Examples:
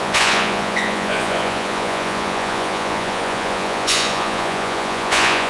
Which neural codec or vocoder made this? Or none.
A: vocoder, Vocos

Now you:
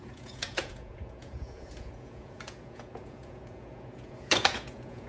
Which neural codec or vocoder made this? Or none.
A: vocoder, Vocos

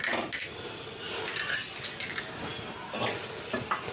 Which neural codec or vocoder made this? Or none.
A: none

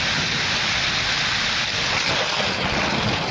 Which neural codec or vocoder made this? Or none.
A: none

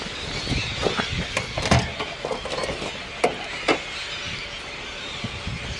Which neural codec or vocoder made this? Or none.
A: none